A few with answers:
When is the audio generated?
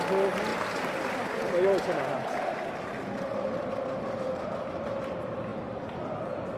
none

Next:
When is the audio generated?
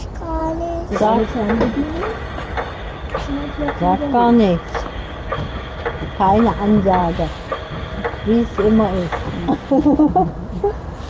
none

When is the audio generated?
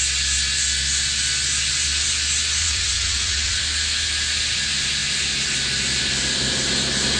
2.6-3.6 (vocoder, WaveNeXt)